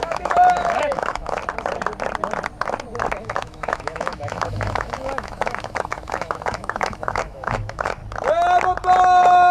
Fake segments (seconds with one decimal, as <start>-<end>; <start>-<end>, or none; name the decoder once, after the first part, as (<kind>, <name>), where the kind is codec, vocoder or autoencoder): 0.0-1.4 (autoencoder, DAC-VAE); 3.2-8.0; 9.0-9.5